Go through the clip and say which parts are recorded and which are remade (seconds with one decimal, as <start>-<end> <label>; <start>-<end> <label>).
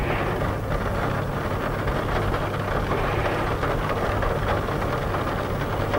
0.0-6.0 recorded